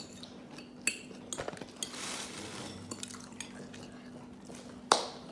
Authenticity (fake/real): real